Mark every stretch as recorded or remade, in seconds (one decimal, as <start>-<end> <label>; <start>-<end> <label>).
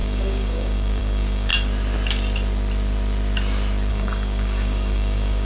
0.0-1.5 remade; 1.5-3.9 recorded; 3.9-5.4 remade